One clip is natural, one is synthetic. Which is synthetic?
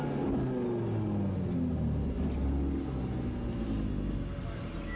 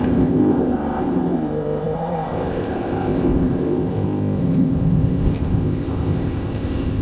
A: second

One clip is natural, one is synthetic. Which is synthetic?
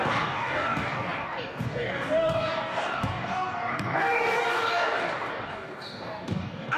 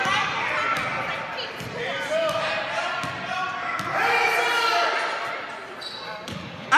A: first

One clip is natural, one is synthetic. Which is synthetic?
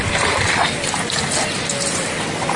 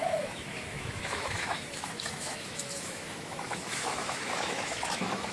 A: second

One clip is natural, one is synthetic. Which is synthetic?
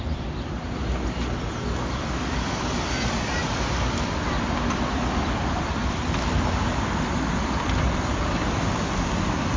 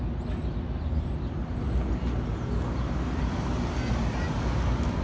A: first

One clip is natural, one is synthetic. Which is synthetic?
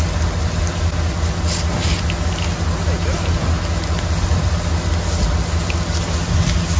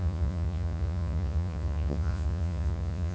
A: second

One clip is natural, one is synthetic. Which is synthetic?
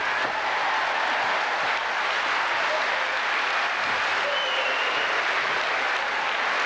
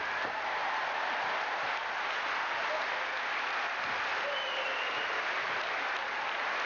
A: second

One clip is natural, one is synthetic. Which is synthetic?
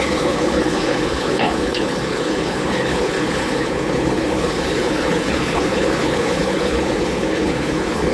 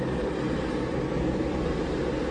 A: first